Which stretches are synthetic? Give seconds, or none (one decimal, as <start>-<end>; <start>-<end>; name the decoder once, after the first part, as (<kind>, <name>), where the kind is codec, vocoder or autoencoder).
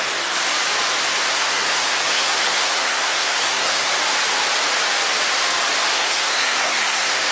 1.3-3.9 (codec, SNAC); 5.9-7.3